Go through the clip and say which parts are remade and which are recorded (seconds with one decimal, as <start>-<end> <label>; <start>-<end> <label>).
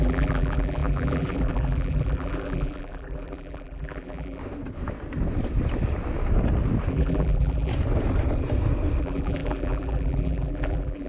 0.0-4.4 remade; 4.4-6.9 recorded; 6.9-7.7 remade; 7.7-9.0 recorded; 9.0-11.1 remade